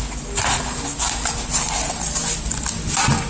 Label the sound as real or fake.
real